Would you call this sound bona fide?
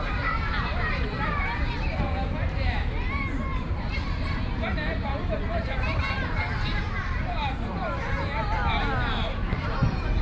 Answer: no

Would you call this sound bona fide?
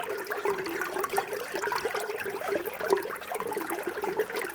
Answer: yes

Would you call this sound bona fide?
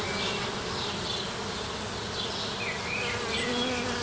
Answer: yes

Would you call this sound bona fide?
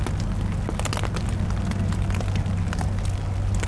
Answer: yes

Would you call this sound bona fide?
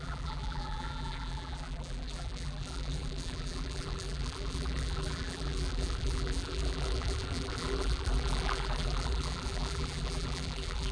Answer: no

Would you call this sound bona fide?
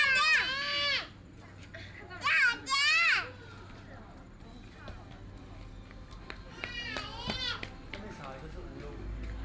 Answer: yes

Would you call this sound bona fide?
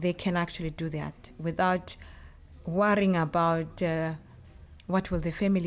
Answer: yes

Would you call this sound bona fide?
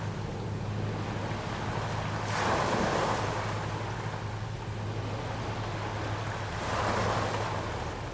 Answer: yes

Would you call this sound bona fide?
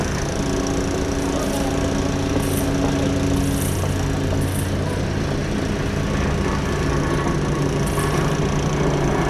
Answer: yes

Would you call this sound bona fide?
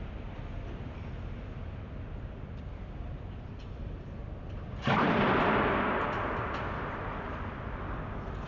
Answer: no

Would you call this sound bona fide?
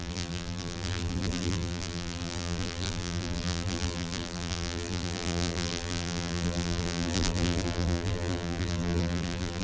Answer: no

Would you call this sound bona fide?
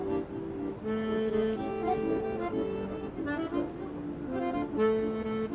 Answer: yes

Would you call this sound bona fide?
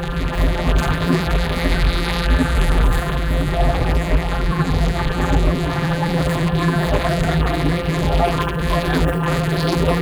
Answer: no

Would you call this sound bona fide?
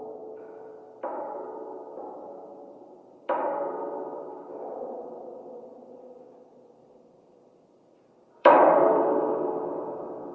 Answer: no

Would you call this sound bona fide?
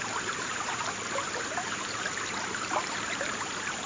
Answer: no